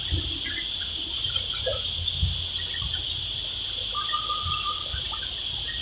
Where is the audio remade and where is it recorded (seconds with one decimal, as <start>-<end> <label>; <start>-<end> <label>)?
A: 0.0-5.8 recorded